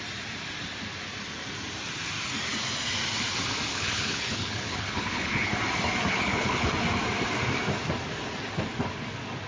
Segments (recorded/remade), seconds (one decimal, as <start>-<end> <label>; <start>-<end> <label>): 0.0-3.7 recorded; 3.7-5.5 remade; 5.5-6.1 recorded; 6.1-6.7 remade; 6.7-9.5 recorded